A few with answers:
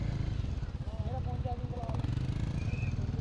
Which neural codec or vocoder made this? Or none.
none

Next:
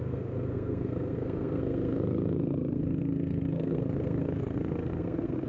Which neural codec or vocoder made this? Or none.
codec, SNAC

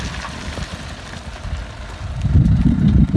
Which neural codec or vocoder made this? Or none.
none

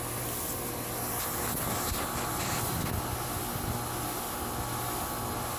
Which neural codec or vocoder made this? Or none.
none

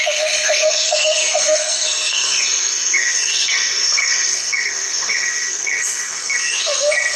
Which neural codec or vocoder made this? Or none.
codec, SNAC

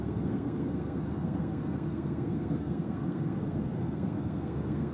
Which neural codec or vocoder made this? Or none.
codec, SNAC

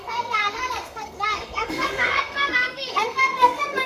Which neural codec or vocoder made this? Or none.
codec, SNAC